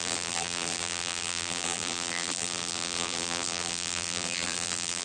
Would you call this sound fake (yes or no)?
yes